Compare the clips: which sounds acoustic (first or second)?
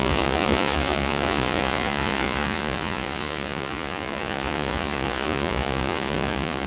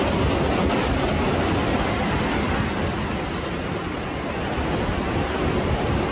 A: second